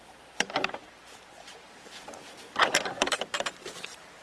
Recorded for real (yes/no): no